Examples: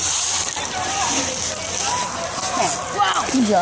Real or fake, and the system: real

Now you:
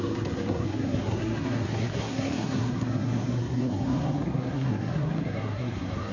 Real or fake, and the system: fake, codec, SNAC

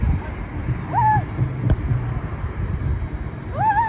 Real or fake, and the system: real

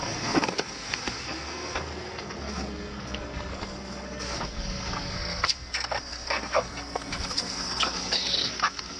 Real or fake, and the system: fake, codec, SNAC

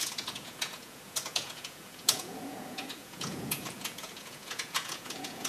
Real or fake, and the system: fake, vocoder, Vocos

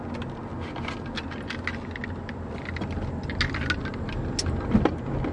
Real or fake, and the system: real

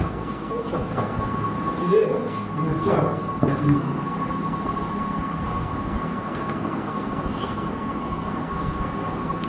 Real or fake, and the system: fake, codec, SNAC